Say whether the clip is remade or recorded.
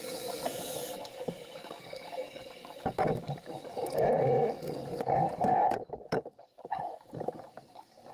remade